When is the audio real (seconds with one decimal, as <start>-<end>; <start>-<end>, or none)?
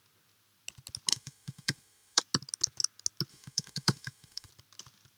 0.0-1.1; 2.2-3.3; 4.5-5.2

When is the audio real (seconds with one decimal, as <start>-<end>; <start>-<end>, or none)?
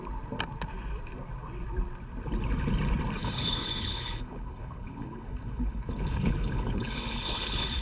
0.0-3.2